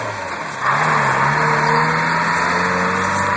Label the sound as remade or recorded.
recorded